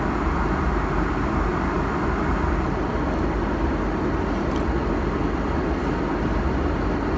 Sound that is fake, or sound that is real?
real